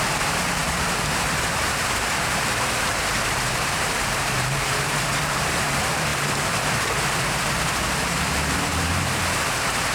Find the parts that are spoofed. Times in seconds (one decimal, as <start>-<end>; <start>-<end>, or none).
0.0-9.9

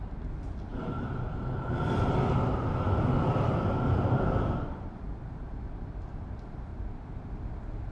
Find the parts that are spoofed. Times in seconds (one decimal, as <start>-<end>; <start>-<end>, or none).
0.0-6.7; 7.3-7.9

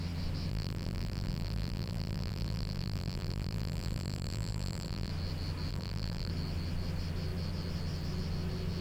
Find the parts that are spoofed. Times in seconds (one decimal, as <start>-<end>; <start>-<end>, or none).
0.5-5.1; 5.7-6.3

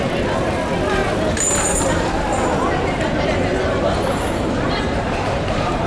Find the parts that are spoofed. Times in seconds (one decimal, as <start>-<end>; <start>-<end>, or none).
3.5-5.9

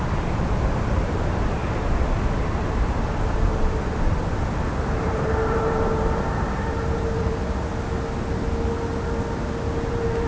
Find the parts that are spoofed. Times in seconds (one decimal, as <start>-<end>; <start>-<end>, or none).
0.0-1.6; 5.0-7.7; 9.9-10.3

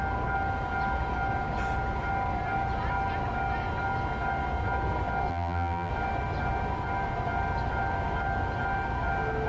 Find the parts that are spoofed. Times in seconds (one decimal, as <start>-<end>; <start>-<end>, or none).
5.3-5.9